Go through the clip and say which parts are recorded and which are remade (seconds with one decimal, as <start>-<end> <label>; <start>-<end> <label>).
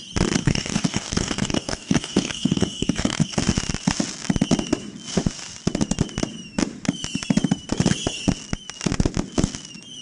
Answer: 0.0-0.4 recorded; 0.4-3.4 remade; 3.4-10.0 recorded